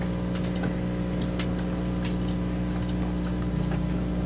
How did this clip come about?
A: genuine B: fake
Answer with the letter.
A